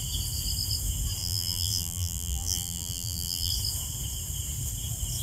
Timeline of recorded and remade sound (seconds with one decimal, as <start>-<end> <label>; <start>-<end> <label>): 0.0-1.2 recorded; 1.2-3.5 remade; 3.5-5.2 recorded